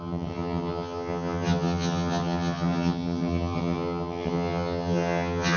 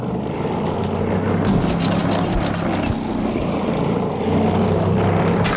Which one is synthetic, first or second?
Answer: first